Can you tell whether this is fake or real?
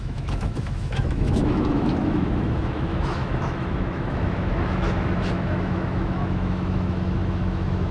fake